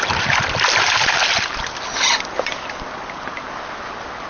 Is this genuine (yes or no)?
yes